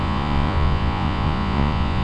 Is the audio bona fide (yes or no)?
no